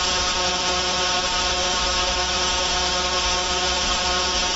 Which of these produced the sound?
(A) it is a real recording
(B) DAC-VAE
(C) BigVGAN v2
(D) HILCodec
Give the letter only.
B